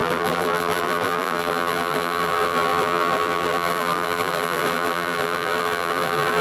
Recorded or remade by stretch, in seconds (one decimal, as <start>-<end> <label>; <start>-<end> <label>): 0.0-6.4 remade